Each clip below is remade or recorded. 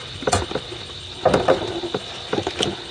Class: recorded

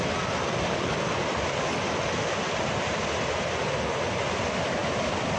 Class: recorded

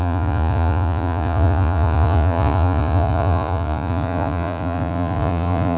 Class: remade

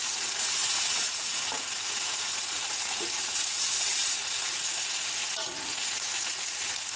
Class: remade